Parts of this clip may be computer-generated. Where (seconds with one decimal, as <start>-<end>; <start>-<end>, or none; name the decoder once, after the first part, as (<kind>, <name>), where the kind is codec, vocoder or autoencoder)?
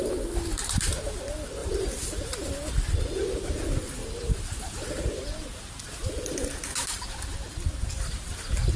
1.6-2.5 (vocoder, BigVGAN v2); 4.0-5.6